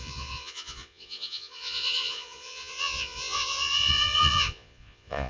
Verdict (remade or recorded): remade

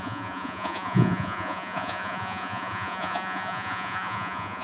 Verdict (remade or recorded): remade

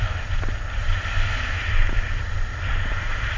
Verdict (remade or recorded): recorded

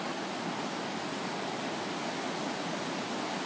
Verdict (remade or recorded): recorded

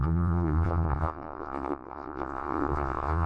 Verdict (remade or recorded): remade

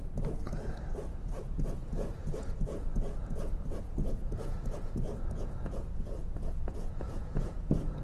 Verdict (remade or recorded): remade